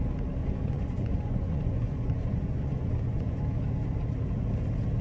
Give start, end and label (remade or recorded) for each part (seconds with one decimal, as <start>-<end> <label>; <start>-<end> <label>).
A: 0.0-0.4 recorded; 0.4-3.4 remade; 3.4-5.0 recorded